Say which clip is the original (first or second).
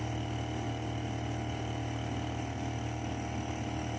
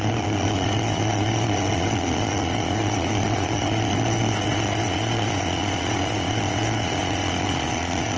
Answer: first